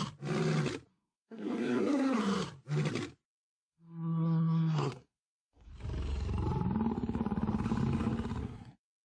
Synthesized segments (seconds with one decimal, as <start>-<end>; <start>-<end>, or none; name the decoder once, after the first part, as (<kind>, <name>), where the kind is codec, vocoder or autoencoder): 0.9-2.2 (codec, SNAC); 3.4-5.7; 8.4-9.0